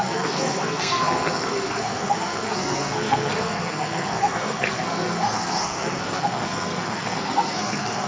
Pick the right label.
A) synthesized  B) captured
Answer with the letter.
A